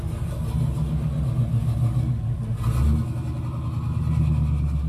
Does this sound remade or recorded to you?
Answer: recorded